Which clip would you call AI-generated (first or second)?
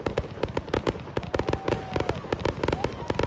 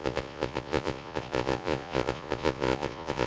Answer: second